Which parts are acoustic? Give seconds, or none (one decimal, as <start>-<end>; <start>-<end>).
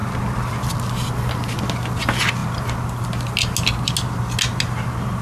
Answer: 0.0-5.2